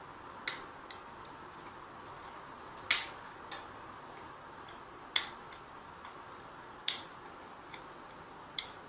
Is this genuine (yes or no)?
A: yes